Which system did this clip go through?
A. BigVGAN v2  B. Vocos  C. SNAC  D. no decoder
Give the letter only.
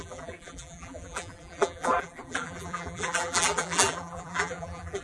A